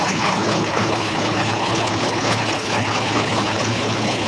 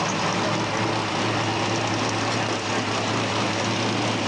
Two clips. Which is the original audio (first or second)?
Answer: second